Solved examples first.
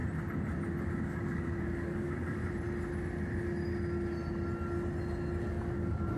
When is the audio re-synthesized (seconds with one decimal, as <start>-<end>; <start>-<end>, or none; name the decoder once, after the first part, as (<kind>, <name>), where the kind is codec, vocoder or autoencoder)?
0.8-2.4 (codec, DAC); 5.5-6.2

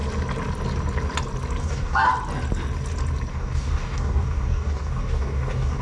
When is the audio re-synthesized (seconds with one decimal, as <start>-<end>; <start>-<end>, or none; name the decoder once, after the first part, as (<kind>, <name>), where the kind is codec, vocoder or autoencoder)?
1.6-2.1 (codec, DAC); 3.3-5.8

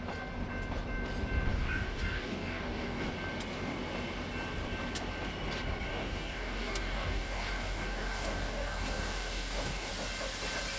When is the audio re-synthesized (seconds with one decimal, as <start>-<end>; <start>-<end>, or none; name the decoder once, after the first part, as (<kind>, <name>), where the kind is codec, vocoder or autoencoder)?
1.5-3.1 (codec, DAC); 5.9-9.9

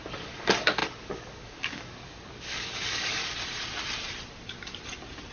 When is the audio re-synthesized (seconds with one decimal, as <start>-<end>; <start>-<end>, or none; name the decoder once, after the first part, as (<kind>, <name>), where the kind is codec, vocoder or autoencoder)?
0.0-3.2 (codec, DAC)